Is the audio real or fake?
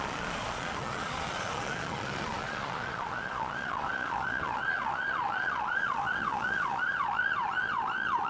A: fake